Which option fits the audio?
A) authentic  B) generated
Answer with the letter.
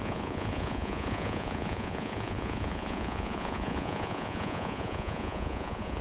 B